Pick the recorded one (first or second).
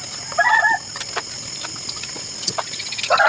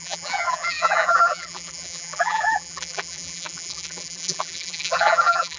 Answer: first